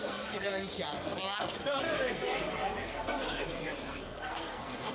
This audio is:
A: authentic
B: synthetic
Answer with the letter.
B